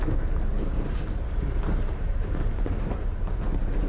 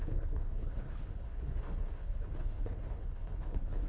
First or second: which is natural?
first